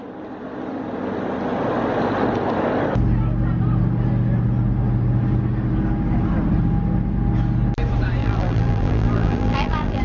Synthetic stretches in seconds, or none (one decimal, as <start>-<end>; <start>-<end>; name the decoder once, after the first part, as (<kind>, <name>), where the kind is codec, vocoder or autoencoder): 8.2-10.0 (vocoder, BigVGAN v2)